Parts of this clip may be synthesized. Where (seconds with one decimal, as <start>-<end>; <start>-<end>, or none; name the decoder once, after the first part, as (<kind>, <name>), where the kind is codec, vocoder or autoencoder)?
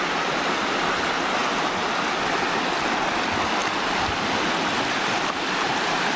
3.6-4.3 (vocoder, BigVGAN v2); 5.0-6.2